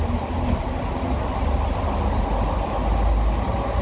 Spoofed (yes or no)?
no